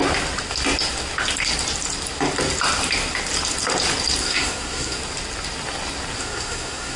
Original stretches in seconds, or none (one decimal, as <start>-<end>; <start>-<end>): 0.0-4.2; 5.0-6.2